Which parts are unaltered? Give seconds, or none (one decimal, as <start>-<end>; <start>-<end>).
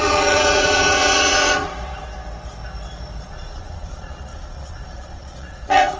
1.7-3.3